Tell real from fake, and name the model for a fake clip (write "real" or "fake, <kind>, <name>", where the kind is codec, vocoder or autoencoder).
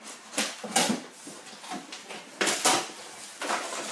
real